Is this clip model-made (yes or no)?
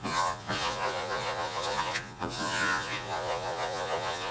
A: yes